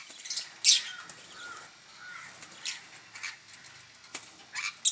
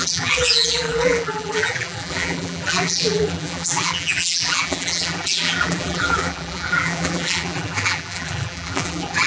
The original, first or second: first